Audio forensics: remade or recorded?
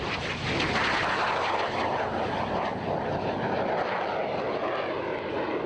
recorded